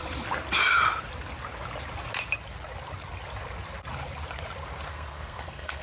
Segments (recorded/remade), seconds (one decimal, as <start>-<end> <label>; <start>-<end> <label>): 0.0-4.9 recorded; 4.9-5.8 remade